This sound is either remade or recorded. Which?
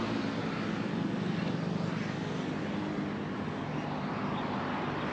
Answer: recorded